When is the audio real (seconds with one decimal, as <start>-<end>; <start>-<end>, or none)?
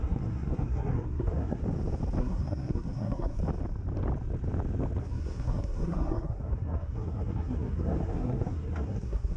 1.6-2.2; 3.4-5.0